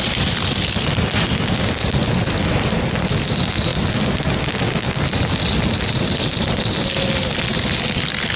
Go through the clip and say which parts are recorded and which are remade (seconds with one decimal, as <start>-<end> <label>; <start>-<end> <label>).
0.0-8.4 recorded